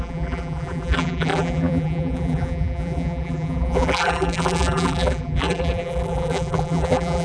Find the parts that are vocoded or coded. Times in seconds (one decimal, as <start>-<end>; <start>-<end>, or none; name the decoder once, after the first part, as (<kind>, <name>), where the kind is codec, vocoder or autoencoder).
0.0-7.2 (vocoder, BigVGAN v2)